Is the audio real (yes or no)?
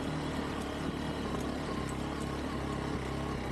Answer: yes